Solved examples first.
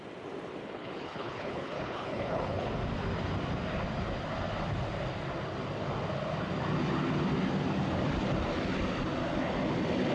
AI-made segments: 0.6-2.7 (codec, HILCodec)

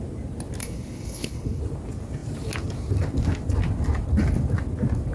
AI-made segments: 0.6-1.6 (codec, HILCodec)